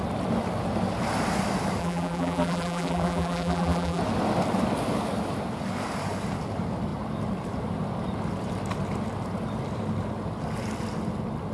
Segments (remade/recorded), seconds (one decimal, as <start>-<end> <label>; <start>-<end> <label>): 0.0-1.8 recorded; 1.8-4.0 remade; 4.0-11.5 recorded